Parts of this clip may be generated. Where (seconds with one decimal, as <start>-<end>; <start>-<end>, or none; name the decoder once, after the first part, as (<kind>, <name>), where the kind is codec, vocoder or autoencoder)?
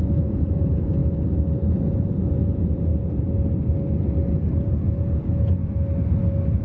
0.0-1.0 (vocoder, Vocos); 1.7-2.9; 4.6-5.6